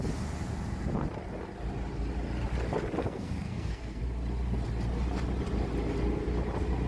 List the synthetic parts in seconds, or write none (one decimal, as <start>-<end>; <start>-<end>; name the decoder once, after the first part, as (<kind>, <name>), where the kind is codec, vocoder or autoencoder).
3.0-4.0 (codec, SNAC)